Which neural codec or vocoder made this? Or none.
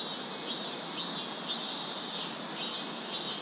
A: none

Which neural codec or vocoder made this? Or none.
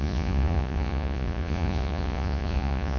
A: vocoder, Vocos